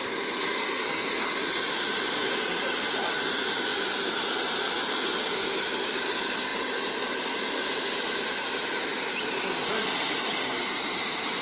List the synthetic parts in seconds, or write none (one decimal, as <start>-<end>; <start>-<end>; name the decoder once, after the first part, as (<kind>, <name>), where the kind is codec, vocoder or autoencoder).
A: 0.6-1.1 (codec, SNAC)